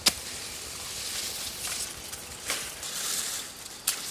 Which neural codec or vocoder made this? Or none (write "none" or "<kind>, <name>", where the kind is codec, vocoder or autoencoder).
none